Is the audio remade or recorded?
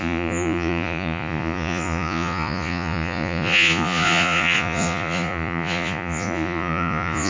remade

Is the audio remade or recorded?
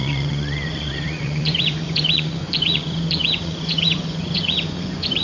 remade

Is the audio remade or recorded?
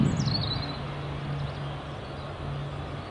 recorded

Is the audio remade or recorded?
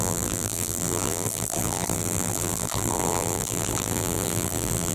remade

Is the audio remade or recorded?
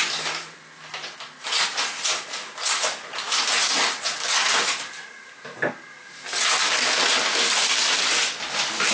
recorded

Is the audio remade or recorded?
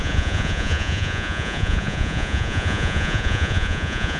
remade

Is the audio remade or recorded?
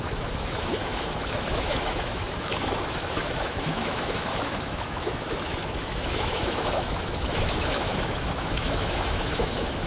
remade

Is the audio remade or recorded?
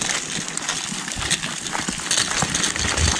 recorded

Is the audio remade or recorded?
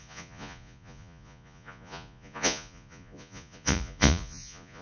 remade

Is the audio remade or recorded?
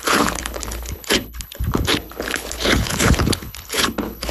remade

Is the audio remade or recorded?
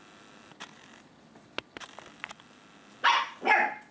recorded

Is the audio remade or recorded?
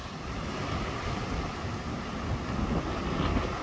recorded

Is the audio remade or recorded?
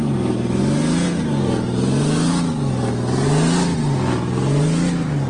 recorded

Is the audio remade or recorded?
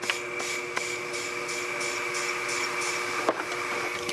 recorded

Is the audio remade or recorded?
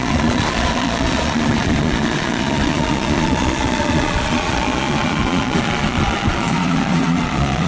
remade